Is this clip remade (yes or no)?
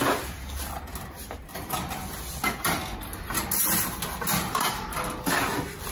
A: no